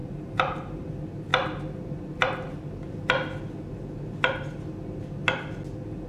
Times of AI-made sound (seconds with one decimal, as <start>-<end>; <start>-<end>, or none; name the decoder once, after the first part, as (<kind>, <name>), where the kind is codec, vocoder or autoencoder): 0.0-0.9 (vocoder, BigVGAN v2)

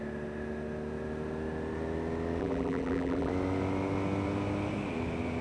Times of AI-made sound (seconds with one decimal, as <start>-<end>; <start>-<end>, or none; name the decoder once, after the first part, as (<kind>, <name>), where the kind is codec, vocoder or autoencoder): 2.4-3.3 (vocoder, BigVGAN v2)

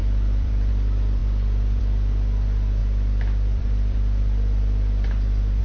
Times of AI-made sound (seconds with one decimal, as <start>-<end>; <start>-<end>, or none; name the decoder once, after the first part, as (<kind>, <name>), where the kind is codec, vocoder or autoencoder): 0.0-0.7 (vocoder, BigVGAN v2); 2.8-5.6

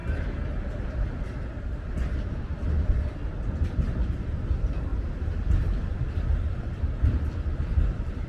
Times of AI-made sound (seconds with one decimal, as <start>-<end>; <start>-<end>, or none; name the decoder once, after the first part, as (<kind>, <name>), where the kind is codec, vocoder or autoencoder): 0.6-4.9 (vocoder, BigVGAN v2); 5.6-8.3

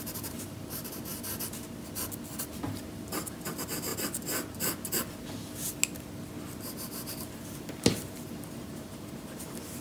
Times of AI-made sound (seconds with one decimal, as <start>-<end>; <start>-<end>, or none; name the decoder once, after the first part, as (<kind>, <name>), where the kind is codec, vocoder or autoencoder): 0.0-1.1 (vocoder, BigVGAN v2); 2.6-3.9; 7.1-9.8

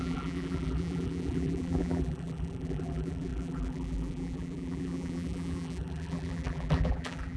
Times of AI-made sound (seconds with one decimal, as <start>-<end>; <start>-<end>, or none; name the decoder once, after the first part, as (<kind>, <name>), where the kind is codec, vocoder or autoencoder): 0.0-7.4 (vocoder, BigVGAN v2)

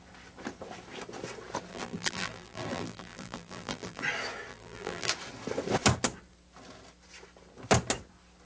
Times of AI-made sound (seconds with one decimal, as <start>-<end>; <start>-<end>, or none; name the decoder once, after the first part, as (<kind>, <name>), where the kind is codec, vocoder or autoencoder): 1.7-4.0 (vocoder, BigVGAN v2); 4.5-5.1